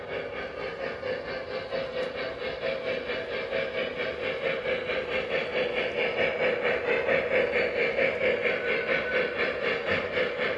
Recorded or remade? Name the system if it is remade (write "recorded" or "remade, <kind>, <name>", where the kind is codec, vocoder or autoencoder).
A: recorded